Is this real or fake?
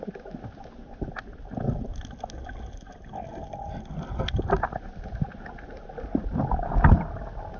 real